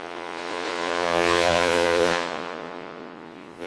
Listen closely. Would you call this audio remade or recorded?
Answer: remade